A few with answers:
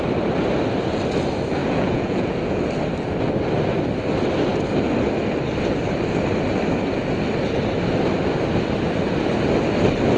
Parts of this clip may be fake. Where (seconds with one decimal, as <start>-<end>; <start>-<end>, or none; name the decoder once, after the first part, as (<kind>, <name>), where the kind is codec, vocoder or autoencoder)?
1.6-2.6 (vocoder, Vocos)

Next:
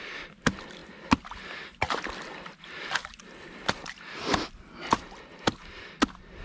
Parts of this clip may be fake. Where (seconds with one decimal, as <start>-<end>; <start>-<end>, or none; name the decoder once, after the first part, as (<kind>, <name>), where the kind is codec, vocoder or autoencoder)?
none

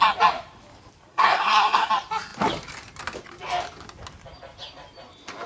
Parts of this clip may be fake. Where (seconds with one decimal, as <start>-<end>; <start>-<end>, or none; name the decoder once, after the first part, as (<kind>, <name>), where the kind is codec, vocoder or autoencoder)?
1.1-1.9 (codec, SNAC)

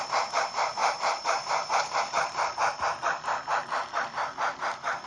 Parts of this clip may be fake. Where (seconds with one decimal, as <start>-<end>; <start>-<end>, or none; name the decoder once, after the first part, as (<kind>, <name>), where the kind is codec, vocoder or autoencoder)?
0.8-2.0 (vocoder, BigVGAN v2)

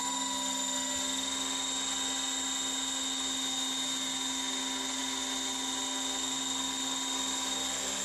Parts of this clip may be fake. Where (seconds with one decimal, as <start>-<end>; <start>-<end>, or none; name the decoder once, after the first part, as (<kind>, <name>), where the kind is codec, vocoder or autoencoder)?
none